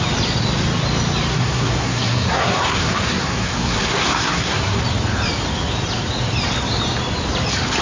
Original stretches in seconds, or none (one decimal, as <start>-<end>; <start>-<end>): 0.0-1.3; 4.8-7.8